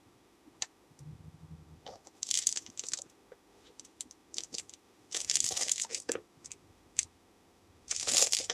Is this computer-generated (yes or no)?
yes